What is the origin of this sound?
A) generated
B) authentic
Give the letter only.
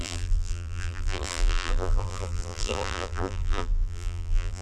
A